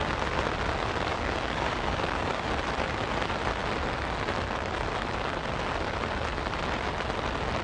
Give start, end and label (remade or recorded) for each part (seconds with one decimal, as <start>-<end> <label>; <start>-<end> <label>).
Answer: 0.0-1.1 recorded; 1.1-2.5 remade; 2.5-7.6 recorded